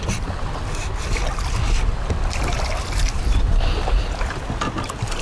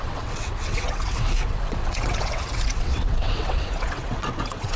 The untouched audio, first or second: first